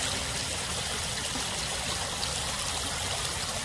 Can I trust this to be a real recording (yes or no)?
yes